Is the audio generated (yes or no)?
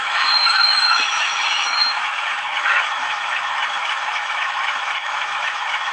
yes